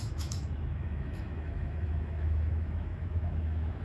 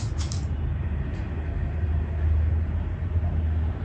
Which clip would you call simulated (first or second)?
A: first